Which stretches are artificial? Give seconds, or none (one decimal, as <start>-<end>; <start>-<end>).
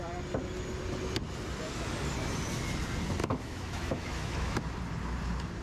3.2-4.6